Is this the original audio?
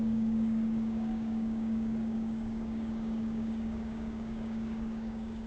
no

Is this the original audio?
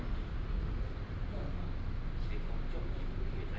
yes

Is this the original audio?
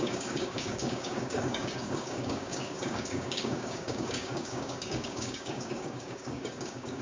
no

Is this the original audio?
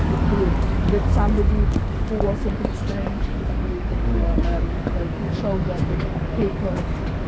no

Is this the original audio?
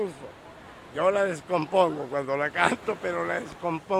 yes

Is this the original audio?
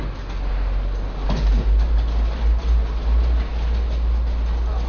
yes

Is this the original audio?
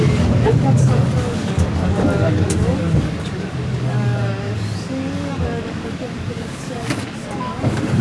no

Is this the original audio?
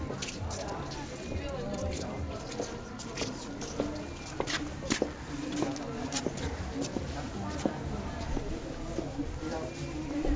yes